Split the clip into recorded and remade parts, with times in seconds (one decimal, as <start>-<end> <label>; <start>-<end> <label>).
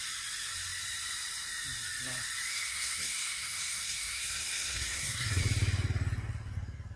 0.0-2.5 recorded; 2.5-5.4 remade; 5.4-7.0 recorded